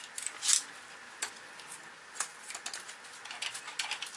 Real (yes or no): yes